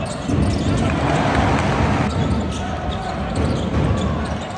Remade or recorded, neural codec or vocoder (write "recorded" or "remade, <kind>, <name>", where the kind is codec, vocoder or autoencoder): recorded